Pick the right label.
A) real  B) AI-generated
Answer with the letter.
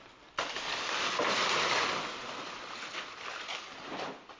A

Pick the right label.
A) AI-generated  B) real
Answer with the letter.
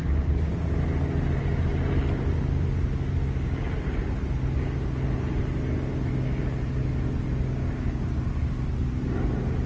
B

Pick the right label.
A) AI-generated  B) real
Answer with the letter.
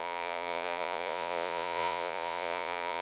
A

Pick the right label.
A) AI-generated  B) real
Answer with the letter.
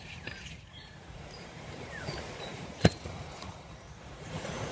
A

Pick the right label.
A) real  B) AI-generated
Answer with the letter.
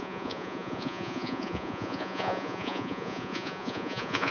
B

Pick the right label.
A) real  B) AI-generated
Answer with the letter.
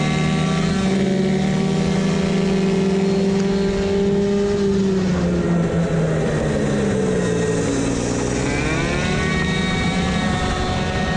A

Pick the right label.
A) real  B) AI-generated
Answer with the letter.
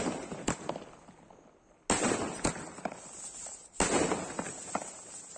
A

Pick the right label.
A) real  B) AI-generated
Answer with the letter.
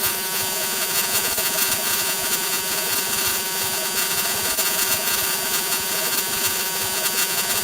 B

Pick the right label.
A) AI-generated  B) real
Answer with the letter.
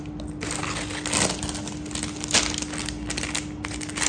B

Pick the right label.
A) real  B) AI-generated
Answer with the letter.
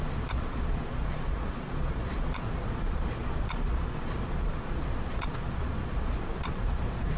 B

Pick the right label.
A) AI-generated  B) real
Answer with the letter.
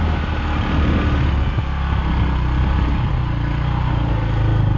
B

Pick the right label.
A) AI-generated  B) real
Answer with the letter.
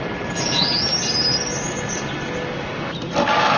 B